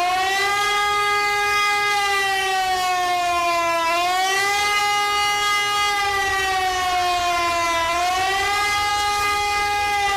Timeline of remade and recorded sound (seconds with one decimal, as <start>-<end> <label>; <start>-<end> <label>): 0.0-0.5 recorded; 0.5-4.8 remade; 4.8-8.9 recorded; 8.9-10.2 remade